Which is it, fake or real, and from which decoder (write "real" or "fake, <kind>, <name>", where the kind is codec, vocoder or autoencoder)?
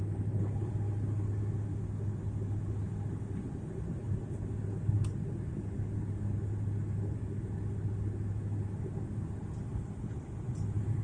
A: real